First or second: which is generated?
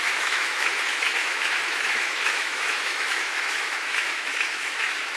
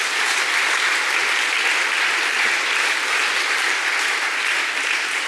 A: first